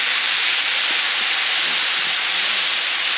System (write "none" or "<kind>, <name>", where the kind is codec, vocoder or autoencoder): none